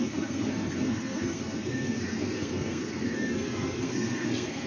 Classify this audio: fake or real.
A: fake